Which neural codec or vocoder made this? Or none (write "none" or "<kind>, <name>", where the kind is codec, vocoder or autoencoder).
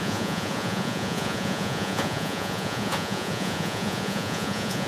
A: vocoder, Vocos